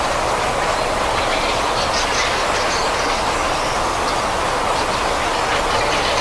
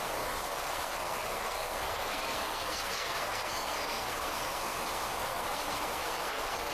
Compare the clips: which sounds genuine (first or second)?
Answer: first